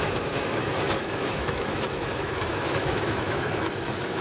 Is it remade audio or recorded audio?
remade